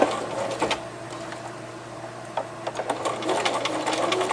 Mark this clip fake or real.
real